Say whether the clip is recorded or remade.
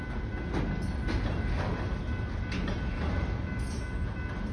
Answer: recorded